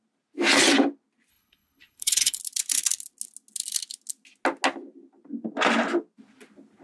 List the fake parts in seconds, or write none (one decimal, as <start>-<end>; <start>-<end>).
1.3-2.4

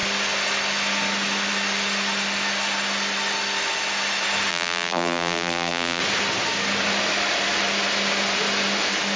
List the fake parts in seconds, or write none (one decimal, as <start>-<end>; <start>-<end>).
4.5-6.0

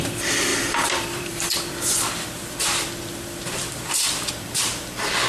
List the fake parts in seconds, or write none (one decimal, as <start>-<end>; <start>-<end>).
0.0-5.3

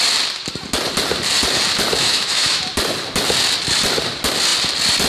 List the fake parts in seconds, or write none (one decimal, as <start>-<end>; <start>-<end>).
2.0-2.6

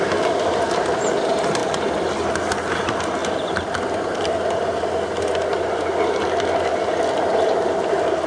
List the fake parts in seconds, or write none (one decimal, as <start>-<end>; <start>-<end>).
none

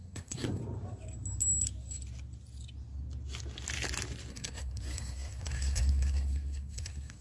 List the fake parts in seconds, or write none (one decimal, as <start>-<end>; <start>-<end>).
0.0-0.6; 4.3-7.2

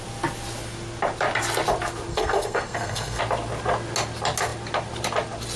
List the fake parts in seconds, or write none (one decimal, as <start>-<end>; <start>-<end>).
2.1-3.2

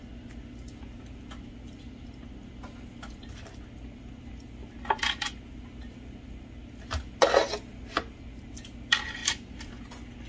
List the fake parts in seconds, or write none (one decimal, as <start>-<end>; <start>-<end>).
none